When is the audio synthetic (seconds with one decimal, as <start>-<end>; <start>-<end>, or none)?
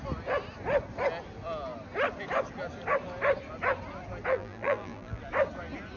4.3-5.2